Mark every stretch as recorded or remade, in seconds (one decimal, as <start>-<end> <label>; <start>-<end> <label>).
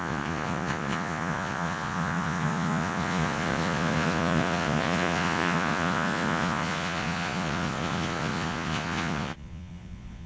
0.0-10.3 remade